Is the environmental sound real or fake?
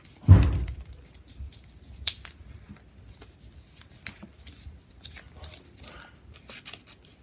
real